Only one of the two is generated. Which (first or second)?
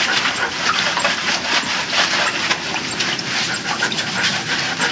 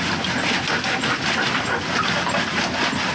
first